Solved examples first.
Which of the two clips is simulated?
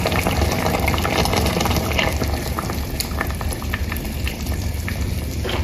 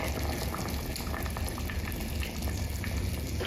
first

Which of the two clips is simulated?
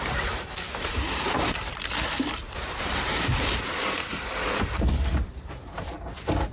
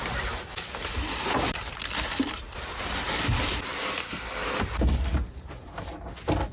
first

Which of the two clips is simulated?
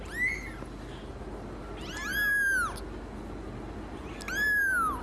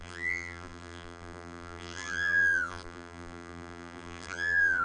second